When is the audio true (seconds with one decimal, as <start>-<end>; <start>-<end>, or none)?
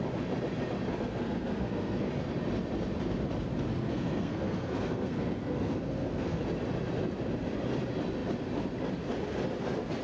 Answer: 0.0-0.9; 2.1-3.7; 6.4-10.0